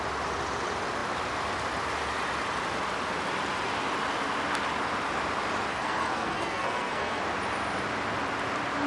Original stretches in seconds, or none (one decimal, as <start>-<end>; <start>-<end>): 0.0-5.7; 7.2-8.9